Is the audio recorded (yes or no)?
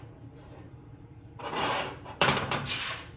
no